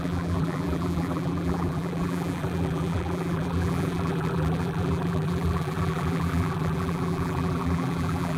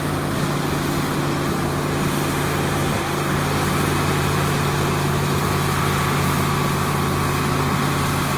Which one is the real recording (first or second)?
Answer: second